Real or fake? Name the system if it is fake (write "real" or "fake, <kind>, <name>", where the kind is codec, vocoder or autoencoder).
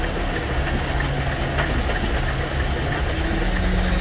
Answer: real